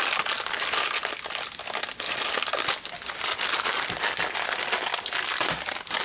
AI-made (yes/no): no